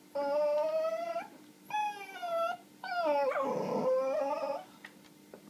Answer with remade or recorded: recorded